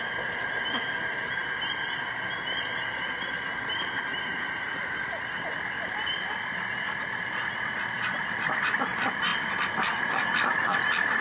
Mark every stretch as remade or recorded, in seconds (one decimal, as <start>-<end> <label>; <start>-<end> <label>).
0.0-11.2 recorded